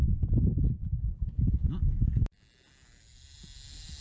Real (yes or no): yes